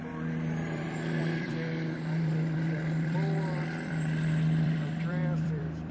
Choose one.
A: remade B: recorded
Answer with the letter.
A